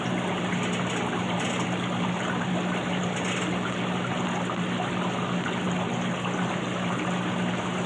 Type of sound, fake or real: real